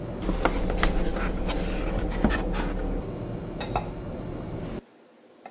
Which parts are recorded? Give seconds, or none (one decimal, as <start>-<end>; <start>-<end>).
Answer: 0.0-5.5